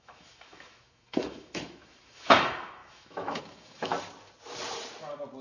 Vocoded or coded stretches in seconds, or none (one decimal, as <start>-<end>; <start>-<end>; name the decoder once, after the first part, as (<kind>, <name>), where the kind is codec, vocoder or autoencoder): 0.0-3.9 (autoencoder, DAC-VAE)